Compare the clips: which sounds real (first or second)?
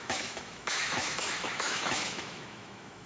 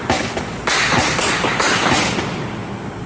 second